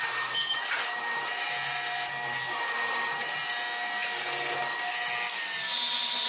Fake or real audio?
real